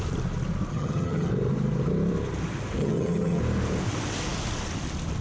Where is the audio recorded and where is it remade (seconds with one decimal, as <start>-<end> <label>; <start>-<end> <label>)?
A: 0.0-0.7 recorded; 0.7-1.3 remade; 1.3-2.8 recorded; 2.8-3.4 remade; 3.4-5.2 recorded

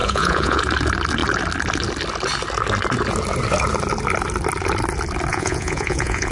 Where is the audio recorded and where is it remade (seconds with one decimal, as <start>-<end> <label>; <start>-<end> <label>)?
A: 0.0-0.6 remade; 0.6-5.3 recorded; 5.3-6.3 remade